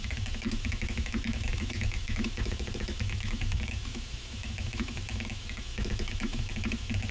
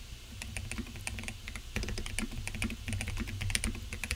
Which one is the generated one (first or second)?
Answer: first